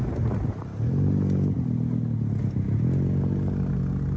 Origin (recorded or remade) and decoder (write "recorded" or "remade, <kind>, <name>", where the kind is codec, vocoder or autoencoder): recorded